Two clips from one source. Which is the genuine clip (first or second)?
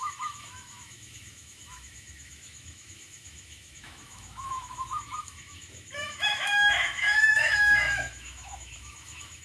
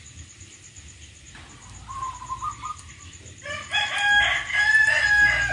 second